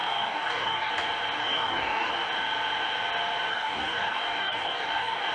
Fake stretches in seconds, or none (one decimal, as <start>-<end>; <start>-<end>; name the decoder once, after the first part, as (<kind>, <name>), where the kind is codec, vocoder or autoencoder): 0.0-0.9 (codec, DAC); 1.4-2.1; 3.5-5.3